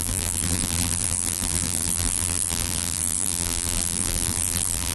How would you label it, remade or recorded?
remade